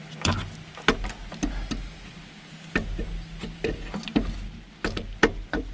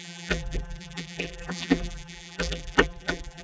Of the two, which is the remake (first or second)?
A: second